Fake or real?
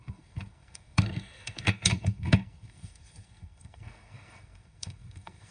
fake